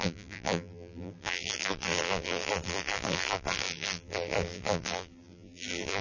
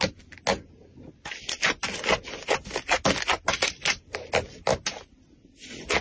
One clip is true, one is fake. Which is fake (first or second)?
first